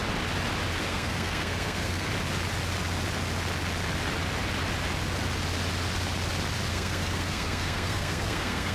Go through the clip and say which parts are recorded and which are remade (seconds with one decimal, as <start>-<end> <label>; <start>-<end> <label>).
0.0-0.8 recorded; 0.8-2.1 remade; 2.1-6.7 recorded; 6.7-8.7 remade